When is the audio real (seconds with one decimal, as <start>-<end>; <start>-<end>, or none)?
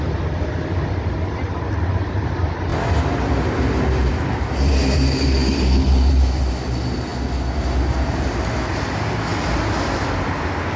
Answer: 0.0-10.8